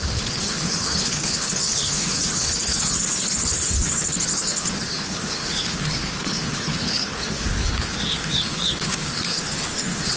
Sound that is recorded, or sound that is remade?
remade